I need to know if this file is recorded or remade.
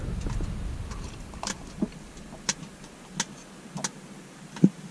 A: recorded